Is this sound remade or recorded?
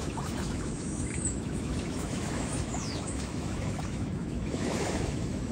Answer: remade